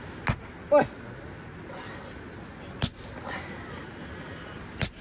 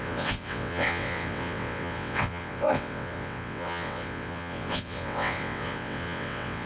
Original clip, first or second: first